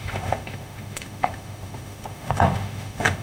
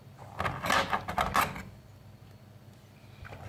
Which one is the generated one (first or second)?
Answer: first